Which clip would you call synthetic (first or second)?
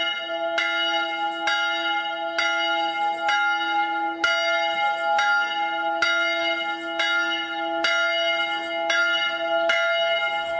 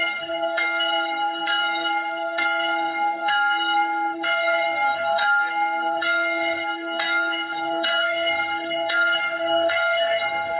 second